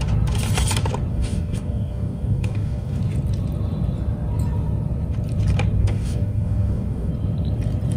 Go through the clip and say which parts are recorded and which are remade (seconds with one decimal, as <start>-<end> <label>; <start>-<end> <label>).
0.0-1.1 recorded; 1.1-3.0 remade; 3.0-5.8 recorded; 5.8-7.1 remade; 7.1-8.0 recorded